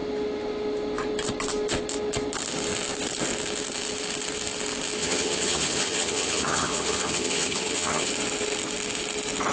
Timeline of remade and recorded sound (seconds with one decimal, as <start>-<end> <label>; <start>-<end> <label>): 0.0-5.0 recorded; 5.0-8.1 remade; 8.1-9.5 recorded